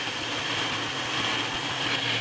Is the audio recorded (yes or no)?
yes